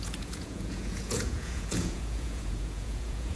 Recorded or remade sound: remade